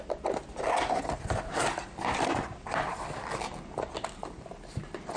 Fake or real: real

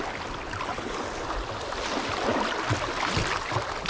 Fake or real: real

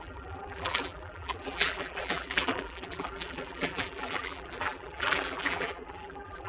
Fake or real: fake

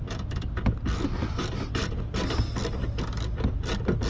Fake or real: real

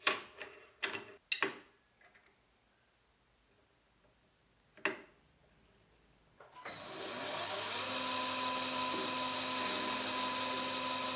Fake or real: real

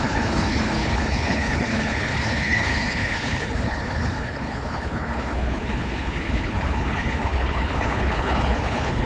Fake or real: fake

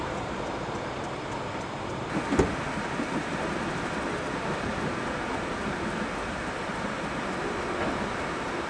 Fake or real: fake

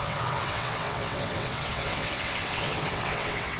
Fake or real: fake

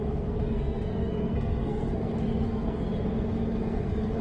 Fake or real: fake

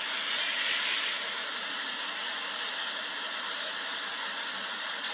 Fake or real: real